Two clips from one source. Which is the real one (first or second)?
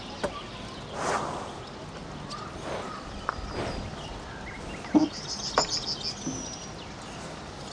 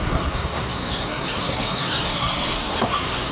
first